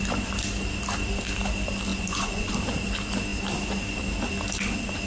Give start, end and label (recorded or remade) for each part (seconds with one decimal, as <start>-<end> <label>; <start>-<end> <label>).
0.0-1.9 recorded; 1.9-2.5 remade; 2.5-5.1 recorded